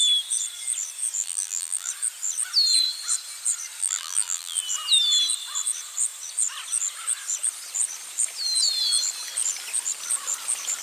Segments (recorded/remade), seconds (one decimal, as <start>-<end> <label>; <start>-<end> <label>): 0.0-1.2 recorded; 1.2-1.9 remade; 1.9-3.8 recorded; 3.8-4.6 remade; 4.6-10.8 recorded